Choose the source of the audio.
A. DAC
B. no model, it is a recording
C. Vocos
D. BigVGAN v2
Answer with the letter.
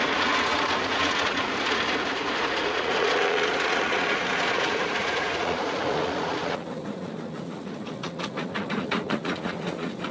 C